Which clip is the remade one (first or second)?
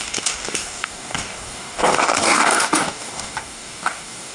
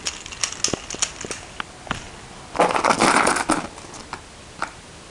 first